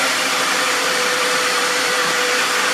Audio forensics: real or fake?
fake